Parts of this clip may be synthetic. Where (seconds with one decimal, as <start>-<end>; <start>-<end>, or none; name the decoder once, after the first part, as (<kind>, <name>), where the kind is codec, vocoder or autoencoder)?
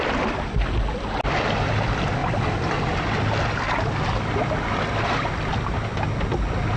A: none